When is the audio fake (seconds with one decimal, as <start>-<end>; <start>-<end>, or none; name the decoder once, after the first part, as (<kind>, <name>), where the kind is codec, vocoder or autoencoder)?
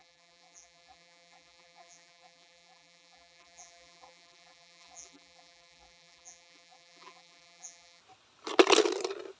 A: 0.0-8.0 (vocoder, BigVGAN v2)